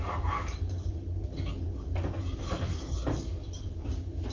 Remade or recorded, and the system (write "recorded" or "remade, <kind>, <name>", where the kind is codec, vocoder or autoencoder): recorded